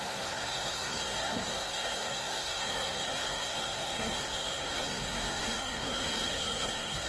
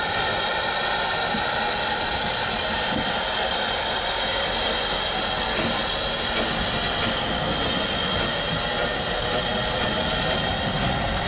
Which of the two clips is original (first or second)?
second